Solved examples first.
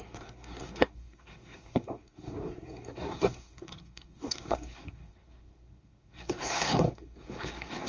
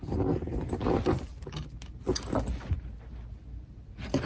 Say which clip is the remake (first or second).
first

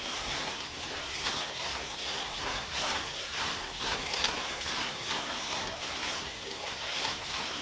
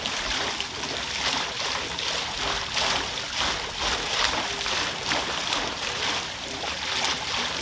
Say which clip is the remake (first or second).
first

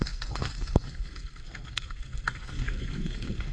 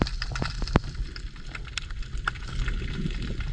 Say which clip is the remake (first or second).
first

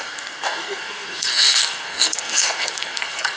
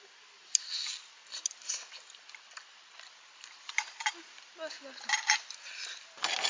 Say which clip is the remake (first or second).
first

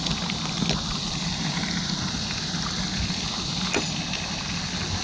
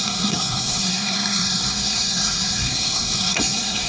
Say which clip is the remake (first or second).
second